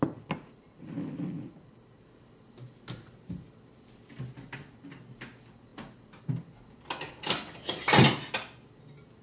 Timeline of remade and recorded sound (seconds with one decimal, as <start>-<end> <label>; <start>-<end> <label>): 0.0-9.2 recorded